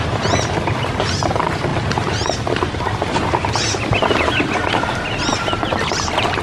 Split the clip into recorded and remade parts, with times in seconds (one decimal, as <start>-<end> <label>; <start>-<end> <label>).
0.0-6.4 remade